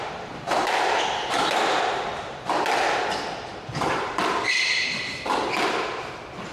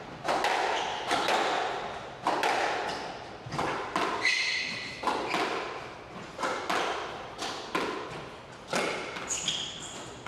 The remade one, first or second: first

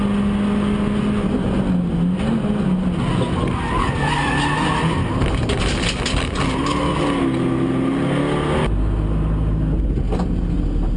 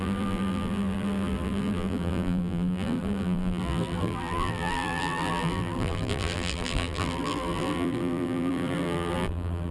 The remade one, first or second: second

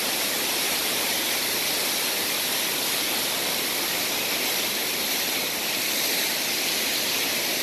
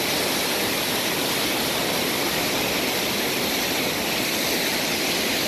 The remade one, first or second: first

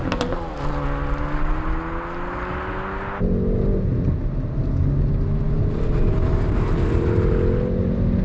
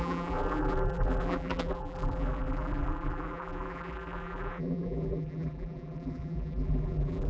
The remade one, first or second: second